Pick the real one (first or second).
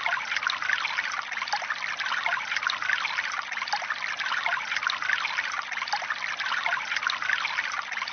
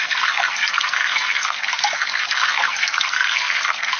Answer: first